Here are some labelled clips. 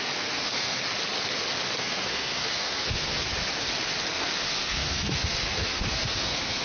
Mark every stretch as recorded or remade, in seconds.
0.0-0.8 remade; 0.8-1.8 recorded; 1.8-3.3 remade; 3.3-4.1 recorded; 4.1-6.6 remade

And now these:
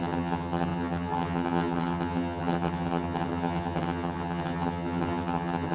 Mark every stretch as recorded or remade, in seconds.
0.0-5.7 remade